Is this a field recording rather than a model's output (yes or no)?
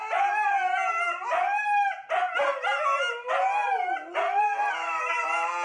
yes